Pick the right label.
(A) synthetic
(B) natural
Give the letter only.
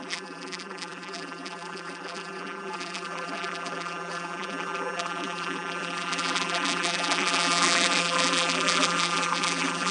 A